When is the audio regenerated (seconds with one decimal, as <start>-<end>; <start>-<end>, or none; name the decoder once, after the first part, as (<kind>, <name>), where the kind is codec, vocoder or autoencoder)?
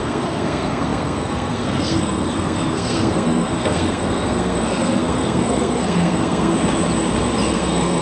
0.0-6.5 (codec, SNAC); 7.5-8.0